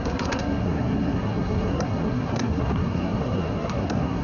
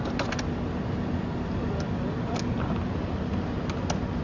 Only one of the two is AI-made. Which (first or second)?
first